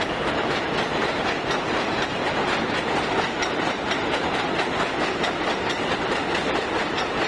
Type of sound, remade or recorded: recorded